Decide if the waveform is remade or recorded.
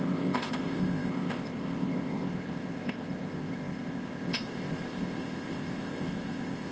remade